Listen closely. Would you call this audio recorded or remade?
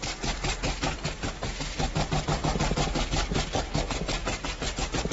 recorded